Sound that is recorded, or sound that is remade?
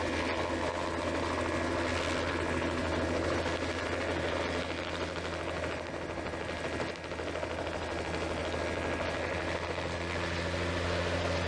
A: recorded